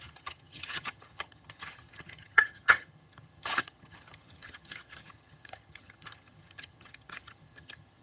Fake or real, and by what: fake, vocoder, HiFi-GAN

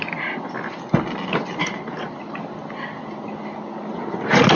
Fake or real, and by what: real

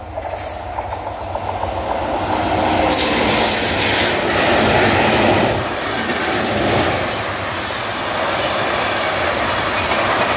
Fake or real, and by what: real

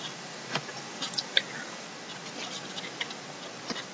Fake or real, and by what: real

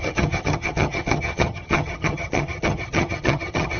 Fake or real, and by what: fake, vocoder, HiFi-GAN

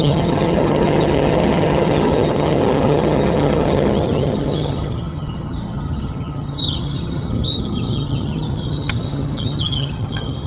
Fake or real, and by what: fake, vocoder, HiFi-GAN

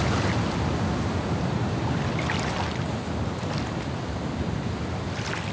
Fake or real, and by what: real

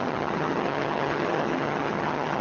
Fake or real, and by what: fake, vocoder, HiFi-GAN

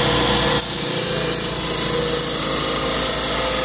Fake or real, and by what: real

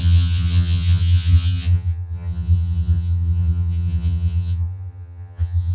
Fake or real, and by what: fake, vocoder, HiFi-GAN